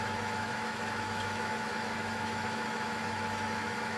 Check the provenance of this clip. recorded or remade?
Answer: remade